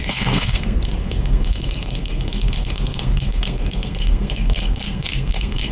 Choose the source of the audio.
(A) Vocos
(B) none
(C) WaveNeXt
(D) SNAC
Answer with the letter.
D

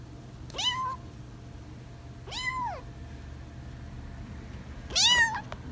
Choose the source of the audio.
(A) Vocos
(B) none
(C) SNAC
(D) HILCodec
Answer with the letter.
B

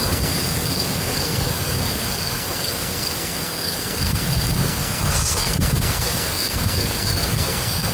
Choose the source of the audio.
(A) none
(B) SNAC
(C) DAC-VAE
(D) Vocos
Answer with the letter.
B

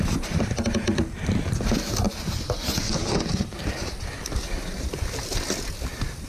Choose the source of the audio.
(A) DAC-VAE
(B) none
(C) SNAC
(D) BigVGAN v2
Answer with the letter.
B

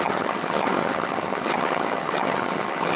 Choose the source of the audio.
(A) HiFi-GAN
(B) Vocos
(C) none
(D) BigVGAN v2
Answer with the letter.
A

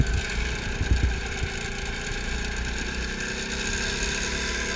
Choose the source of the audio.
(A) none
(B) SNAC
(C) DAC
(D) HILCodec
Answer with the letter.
A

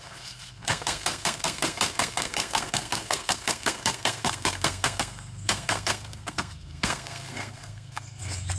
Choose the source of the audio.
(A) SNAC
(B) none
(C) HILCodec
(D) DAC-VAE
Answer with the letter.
A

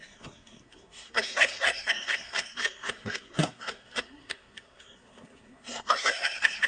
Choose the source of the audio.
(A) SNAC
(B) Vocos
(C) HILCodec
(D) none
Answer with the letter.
A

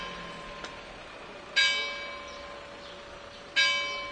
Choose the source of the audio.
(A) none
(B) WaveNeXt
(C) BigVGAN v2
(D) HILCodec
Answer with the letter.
A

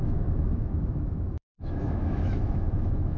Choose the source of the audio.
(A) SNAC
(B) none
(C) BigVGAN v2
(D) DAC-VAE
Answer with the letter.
D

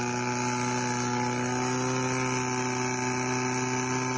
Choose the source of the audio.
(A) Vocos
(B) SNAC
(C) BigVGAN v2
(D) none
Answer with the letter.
D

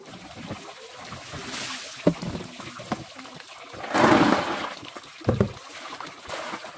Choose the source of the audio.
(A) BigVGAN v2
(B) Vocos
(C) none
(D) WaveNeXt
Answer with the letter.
C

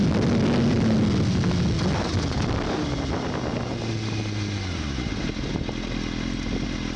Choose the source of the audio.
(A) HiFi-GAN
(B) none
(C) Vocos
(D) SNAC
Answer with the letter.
B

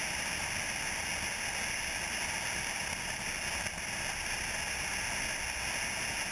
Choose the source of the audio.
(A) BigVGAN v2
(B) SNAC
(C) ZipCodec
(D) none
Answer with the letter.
D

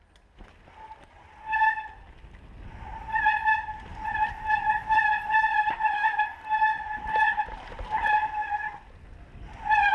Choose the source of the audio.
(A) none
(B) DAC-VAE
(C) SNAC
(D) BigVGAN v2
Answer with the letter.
A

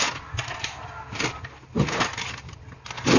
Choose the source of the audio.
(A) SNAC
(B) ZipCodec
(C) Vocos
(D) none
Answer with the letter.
D